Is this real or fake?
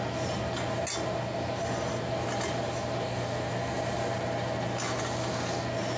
real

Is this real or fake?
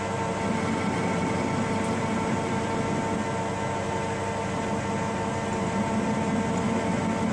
real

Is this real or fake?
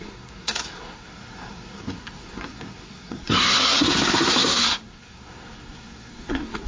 fake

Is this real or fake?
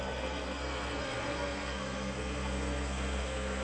fake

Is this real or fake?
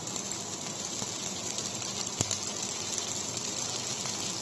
real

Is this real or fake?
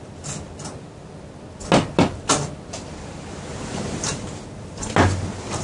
real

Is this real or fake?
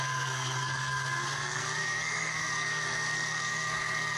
fake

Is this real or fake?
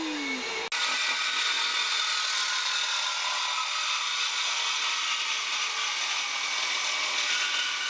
real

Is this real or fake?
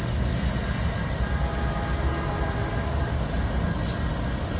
real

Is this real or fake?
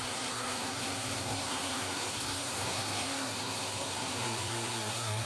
fake